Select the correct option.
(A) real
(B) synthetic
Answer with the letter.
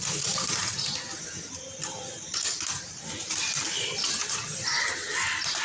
A